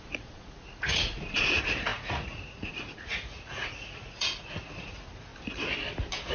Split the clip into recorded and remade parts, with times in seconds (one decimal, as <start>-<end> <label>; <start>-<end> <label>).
0.0-5.3 remade; 5.3-6.3 recorded